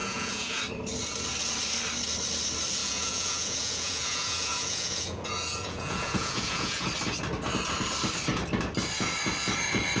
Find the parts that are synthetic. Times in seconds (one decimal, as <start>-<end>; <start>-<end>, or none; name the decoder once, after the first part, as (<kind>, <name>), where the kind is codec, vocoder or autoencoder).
0.0-0.6 (vocoder, Vocos); 2.8-6.9